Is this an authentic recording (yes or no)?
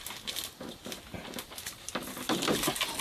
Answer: yes